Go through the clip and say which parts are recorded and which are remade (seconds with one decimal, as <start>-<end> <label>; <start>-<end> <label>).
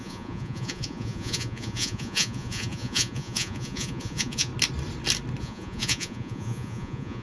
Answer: 0.0-4.5 remade; 4.5-5.4 recorded; 5.4-7.2 remade